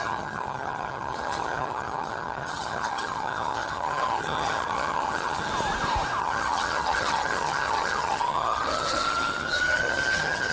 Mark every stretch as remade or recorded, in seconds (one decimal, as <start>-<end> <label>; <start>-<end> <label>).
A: 0.0-5.5 remade; 5.5-6.2 recorded; 6.2-10.5 remade